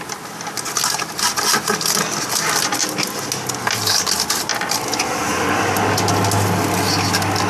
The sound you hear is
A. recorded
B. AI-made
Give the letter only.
A